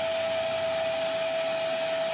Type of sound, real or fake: real